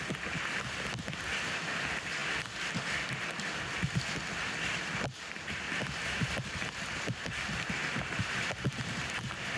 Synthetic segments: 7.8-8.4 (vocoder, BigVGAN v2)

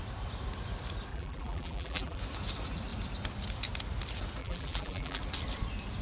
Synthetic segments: 1.1-2.2 (vocoder, BigVGAN v2); 4.4-5.2

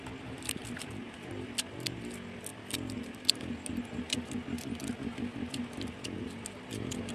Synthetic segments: none

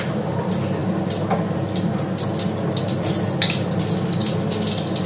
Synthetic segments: none

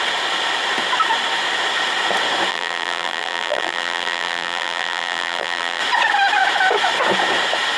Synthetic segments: 2.5-5.8 (vocoder, BigVGAN v2)

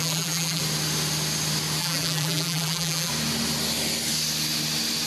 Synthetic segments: 0.0-0.6 (vocoder, BigVGAN v2); 1.8-3.1